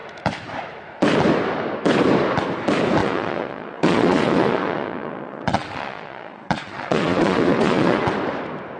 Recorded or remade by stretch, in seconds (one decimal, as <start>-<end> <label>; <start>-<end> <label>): 0.0-3.0 recorded; 3.0-8.1 remade; 8.1-8.8 recorded